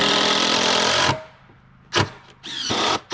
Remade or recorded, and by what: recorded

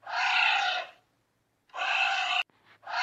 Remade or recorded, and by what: recorded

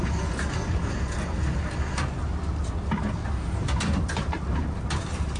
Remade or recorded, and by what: recorded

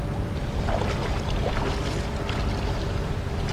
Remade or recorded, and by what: recorded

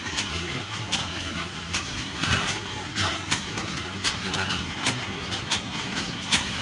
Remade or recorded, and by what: remade, codec, SNAC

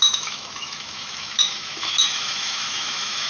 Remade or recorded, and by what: remade, autoencoder, DAC-VAE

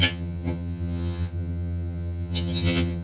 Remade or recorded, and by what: remade, vocoder, HiFi-GAN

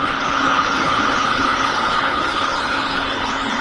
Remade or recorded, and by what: remade, codec, HILCodec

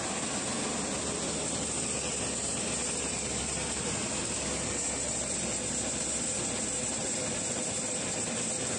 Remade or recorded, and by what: recorded